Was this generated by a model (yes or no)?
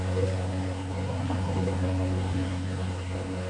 yes